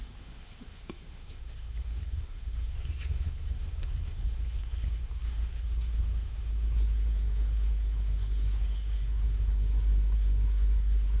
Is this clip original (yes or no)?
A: no